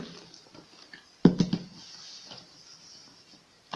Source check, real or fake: real